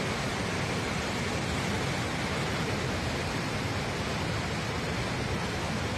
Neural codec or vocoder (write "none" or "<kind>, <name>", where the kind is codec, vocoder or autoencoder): none